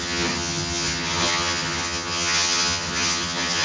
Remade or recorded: remade